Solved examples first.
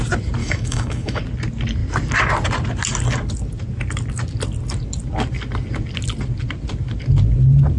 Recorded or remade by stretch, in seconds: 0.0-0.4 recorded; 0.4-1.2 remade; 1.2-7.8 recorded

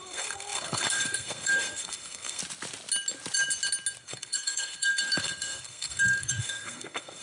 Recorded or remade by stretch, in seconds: 0.0-2.4 remade; 2.4-4.0 recorded; 4.0-7.2 remade

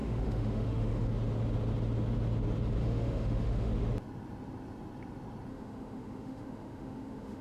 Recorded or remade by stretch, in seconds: 0.0-1.1 remade; 1.1-2.8 recorded; 2.8-3.7 remade; 3.7-5.5 recorded; 5.5-7.4 remade

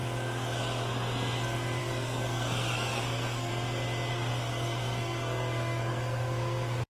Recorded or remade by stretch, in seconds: 0.0-1.8 recorded; 1.8-3.5 remade; 3.5-4.1 recorded; 4.1-6.9 remade

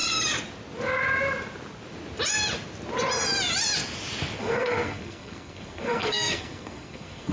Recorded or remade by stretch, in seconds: 0.0-4.4 recorded; 4.4-7.3 remade

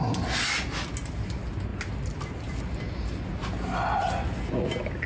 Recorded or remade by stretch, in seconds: 0.0-5.1 recorded

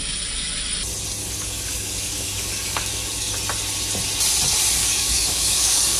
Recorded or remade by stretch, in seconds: 0.0-1.2 recorded; 1.2-3.3 remade; 3.3-4.8 recorded; 4.8-6.0 remade

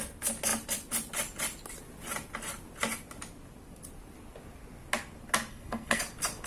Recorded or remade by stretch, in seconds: 0.0-5.5 recorded; 5.5-6.0 remade; 6.0-6.5 recorded